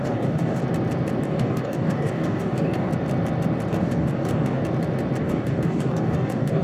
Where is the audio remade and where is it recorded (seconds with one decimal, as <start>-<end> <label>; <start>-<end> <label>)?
0.0-0.6 remade; 0.6-1.2 recorded; 1.2-2.9 remade; 2.9-3.7 recorded; 3.7-4.6 remade; 4.6-5.2 recorded; 5.2-6.6 remade

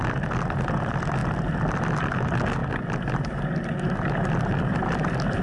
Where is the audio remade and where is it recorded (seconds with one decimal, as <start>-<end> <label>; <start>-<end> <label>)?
0.0-5.4 recorded

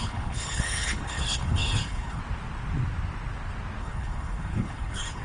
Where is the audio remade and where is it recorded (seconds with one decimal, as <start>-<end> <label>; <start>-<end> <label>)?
0.0-2.2 remade; 2.2-3.8 recorded; 3.8-5.2 remade

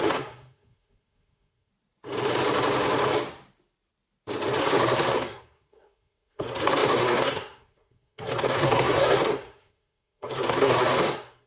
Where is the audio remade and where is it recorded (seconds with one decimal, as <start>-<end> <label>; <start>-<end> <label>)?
0.0-1.7 remade; 1.7-4.6 recorded; 4.6-11.5 remade

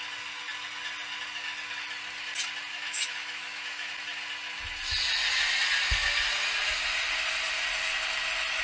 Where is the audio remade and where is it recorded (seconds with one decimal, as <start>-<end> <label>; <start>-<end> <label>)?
0.0-2.7 recorded; 2.7-3.9 remade; 3.9-8.6 recorded